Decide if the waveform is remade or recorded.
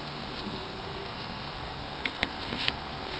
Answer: remade